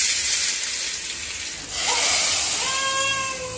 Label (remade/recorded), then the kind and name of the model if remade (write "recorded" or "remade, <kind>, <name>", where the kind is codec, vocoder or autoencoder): recorded